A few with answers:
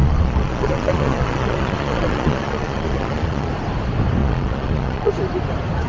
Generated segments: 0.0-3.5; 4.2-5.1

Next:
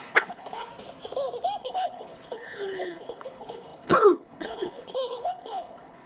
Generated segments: 0.0-0.7; 1.6-6.1

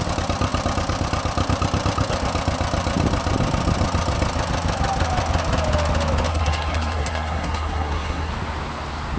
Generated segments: 6.3-8.3

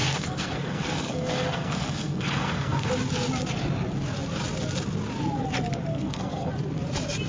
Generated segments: 0.0-2.9; 5.9-6.5

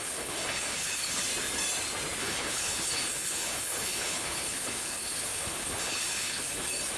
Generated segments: 0.0-1.2; 2.2-6.4

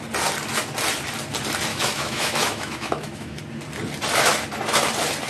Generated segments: 1.7-3.4

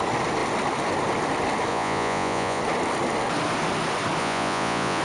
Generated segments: 1.7-2.6; 4.2-5.0